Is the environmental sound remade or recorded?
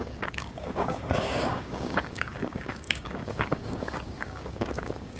remade